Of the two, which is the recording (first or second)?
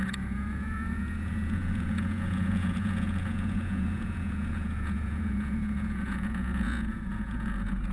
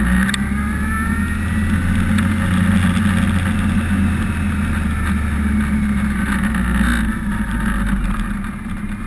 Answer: second